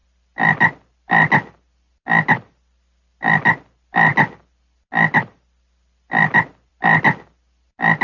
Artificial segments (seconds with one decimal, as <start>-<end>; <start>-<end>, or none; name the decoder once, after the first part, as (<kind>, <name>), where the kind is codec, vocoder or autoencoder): none